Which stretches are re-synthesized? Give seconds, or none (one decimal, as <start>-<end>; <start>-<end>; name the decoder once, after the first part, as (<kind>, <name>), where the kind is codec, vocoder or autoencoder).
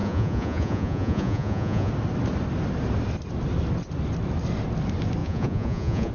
0.0-1.9 (vocoder, Vocos); 5.2-6.1